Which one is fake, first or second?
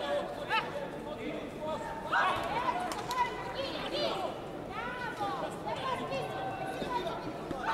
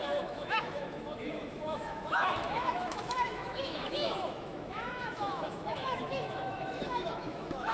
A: second